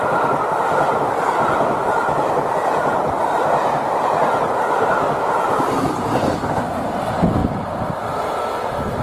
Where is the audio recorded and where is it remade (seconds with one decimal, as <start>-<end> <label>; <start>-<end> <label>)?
0.0-9.0 recorded